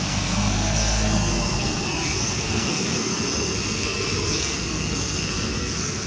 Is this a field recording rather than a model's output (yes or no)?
no